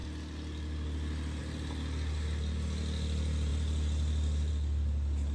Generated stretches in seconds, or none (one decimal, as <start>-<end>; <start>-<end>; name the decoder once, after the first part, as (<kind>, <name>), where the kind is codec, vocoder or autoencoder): none